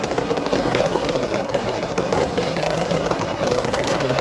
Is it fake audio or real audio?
fake